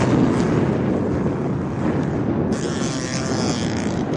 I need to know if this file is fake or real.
real